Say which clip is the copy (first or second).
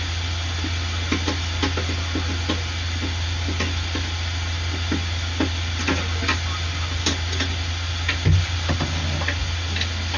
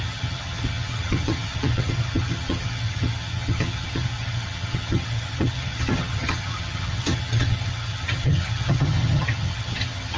second